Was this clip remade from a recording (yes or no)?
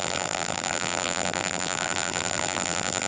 yes